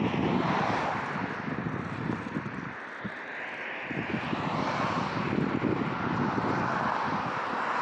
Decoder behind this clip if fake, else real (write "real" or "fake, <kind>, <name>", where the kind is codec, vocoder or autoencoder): real